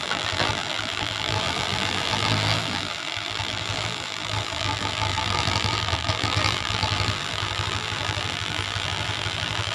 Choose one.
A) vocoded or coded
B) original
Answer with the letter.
A